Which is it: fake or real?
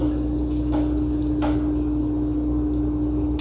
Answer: real